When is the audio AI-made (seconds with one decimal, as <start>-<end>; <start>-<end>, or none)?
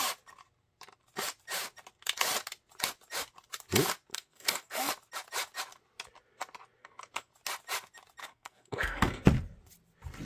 4.1-4.9; 6.8-7.3; 8.2-9.3